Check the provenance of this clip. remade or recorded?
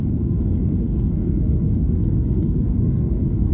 remade